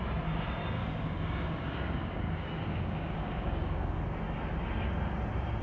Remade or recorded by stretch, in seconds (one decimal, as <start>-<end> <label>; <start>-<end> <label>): 0.0-0.8 recorded; 0.8-4.2 remade; 4.2-5.6 recorded